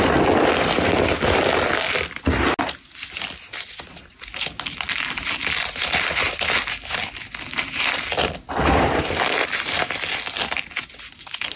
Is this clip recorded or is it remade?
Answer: recorded